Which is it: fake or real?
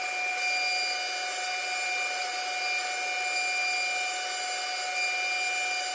real